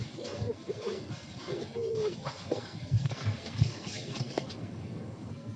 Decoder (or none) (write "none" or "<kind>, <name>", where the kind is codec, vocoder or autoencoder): codec, SNAC